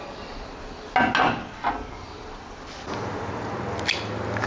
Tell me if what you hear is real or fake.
real